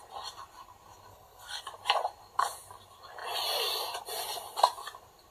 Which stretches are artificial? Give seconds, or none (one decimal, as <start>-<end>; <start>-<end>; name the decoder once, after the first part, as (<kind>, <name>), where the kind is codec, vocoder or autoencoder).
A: 1.1-1.6 (codec, SNAC)